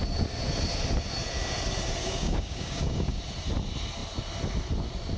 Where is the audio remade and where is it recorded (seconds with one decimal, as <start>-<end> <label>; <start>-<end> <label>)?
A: 0.0-2.0 recorded; 2.0-3.2 remade; 3.2-5.2 recorded